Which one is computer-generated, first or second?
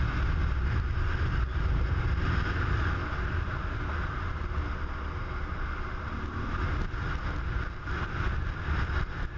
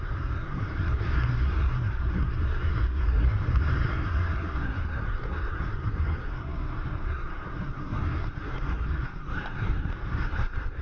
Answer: second